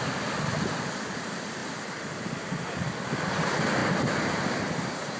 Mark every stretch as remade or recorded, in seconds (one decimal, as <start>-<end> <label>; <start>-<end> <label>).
0.0-5.2 recorded